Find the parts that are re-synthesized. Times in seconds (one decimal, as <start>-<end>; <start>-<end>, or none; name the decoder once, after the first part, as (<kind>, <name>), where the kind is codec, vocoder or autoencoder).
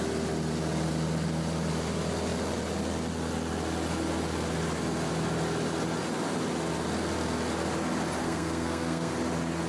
8.2-9.1 (codec, SNAC)